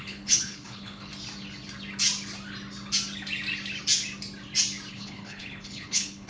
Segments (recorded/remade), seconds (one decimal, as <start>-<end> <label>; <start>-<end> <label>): 0.0-1.1 remade; 1.1-4.9 recorded; 4.9-6.3 remade